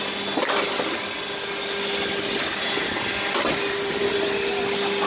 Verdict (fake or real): real